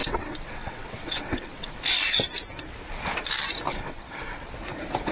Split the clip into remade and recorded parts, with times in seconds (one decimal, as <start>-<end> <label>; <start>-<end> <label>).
0.0-1.8 remade; 1.8-3.7 recorded; 3.7-4.4 remade; 4.4-5.1 recorded